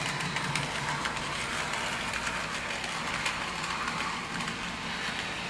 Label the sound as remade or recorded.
recorded